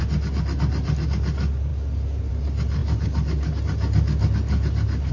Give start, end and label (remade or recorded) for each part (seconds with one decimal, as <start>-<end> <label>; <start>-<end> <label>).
0.0-5.1 recorded